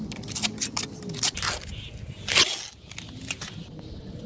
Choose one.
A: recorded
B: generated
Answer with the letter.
A